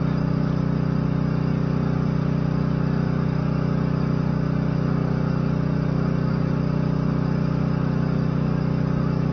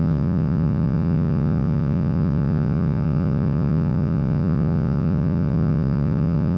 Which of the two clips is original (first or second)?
first